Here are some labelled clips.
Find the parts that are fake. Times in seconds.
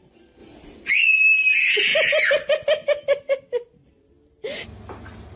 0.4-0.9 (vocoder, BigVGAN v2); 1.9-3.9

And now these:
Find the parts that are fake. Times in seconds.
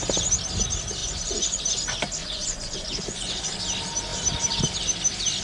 1.0-1.8 (vocoder, Vocos); 2.2-3.6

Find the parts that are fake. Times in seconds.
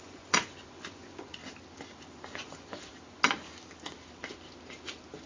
0.0-1.4 (vocoder, Vocos); 2.3-2.9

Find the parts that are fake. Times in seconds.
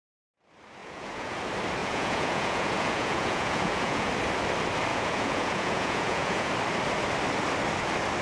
0.8-1.4 (vocoder, Vocos); 1.8-4.1; 4.9-6.5